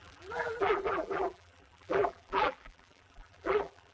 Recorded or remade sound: remade